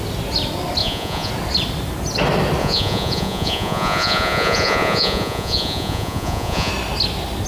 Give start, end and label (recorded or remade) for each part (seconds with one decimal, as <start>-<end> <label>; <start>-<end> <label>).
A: 0.0-0.8 recorded; 0.8-1.3 remade; 1.3-2.6 recorded; 2.6-6.7 remade; 6.7-7.5 recorded